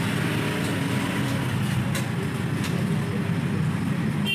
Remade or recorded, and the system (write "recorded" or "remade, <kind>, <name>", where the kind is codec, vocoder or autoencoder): recorded